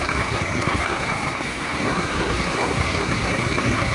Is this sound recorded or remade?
remade